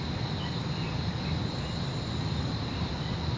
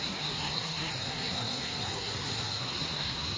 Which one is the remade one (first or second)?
second